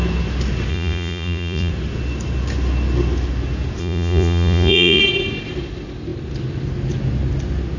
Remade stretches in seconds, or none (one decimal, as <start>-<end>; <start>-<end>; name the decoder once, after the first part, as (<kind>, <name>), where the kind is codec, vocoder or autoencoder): 0.7-1.7 (vocoder, Vocos); 3.8-5.0